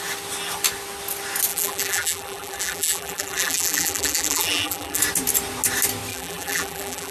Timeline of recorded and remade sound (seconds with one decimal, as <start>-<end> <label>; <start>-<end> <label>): 0.0-1.5 recorded; 1.5-5.0 remade; 5.0-6.1 recorded; 6.1-7.1 remade